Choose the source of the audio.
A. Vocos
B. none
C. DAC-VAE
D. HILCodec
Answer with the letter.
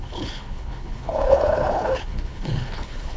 D